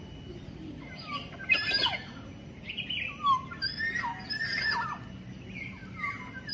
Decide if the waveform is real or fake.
real